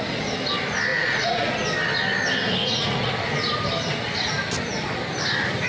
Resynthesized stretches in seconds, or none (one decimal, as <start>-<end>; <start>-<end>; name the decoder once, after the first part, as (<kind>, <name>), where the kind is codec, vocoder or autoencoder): 0.9-1.5 (vocoder, Vocos); 2.6-3.1